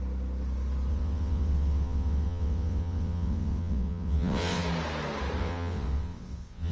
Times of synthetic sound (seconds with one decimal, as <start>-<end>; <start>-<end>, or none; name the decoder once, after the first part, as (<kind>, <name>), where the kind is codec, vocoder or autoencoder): 0.9-4.6 (vocoder, WaveNeXt); 5.4-6.7